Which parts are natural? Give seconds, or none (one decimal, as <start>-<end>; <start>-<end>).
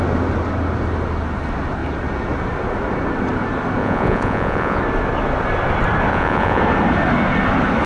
0.0-3.8; 4.8-6.1; 6.6-7.9